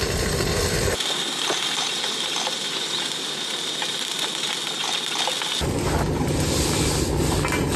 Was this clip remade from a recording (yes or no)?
no